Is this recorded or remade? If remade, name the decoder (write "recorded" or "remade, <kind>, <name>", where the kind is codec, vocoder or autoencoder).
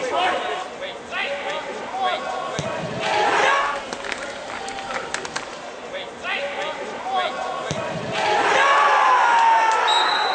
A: recorded